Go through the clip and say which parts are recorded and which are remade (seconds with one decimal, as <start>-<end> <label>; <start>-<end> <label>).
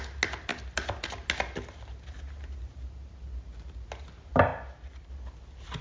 0.0-5.8 recorded